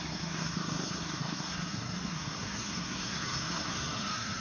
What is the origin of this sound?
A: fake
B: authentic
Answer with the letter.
A